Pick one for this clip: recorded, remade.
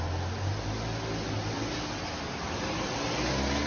recorded